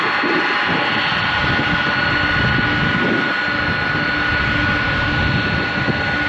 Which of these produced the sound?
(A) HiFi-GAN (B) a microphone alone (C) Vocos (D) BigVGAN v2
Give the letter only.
B